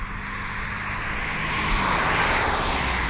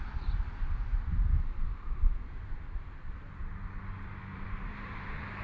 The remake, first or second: second